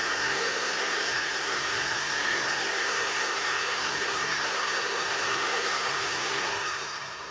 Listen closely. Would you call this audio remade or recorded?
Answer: remade